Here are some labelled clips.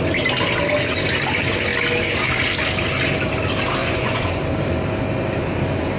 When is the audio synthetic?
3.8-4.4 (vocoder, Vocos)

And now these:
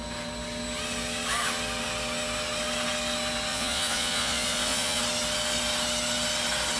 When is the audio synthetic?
3.5-5.0 (vocoder, Vocos)

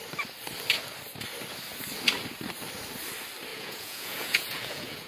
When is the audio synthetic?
3.5-5.1 (vocoder, Vocos)

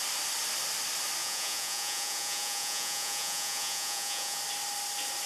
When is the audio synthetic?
1.2-4.4 (vocoder, Vocos)

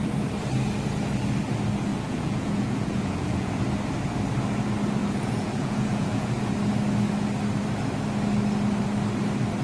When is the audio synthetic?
1.9-3.5 (vocoder, Vocos); 5.0-6.3